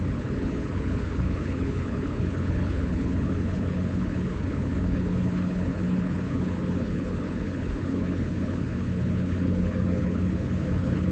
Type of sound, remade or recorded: remade